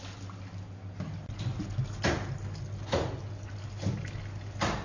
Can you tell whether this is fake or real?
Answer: real